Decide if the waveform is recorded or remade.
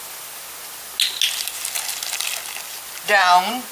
recorded